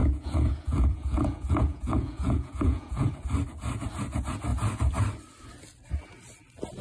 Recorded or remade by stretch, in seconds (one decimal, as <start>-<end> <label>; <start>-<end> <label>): 0.0-3.1 remade; 3.1-6.8 recorded